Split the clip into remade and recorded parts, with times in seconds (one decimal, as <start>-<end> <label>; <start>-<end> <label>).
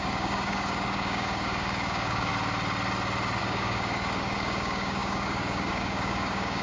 0.0-2.3 remade; 2.3-3.4 recorded; 3.4-6.6 remade